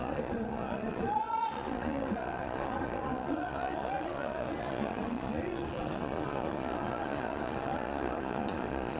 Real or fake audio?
fake